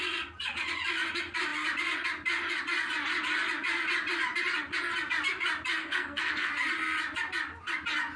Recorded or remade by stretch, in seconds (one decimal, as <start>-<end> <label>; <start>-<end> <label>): 0.0-5.8 recorded; 5.8-6.5 remade; 6.5-8.2 recorded